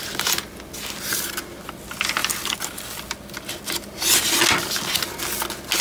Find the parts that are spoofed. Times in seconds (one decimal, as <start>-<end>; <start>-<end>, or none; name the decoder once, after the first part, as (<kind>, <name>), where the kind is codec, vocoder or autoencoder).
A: none